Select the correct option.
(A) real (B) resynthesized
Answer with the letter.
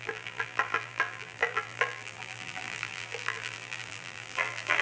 B